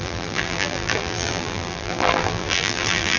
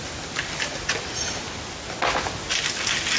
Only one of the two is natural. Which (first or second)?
second